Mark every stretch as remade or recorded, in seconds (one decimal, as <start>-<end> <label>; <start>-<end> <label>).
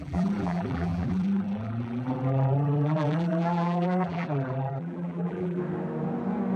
0.0-5.6 remade; 5.6-6.6 recorded